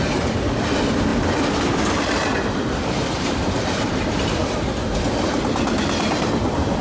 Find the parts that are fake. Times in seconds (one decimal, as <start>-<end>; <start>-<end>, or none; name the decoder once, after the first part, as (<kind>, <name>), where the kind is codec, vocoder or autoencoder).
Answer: 1.1-1.8 (vocoder, BigVGAN v2); 2.2-4.4